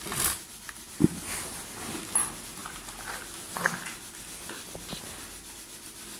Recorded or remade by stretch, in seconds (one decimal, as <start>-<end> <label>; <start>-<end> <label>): 0.0-6.2 recorded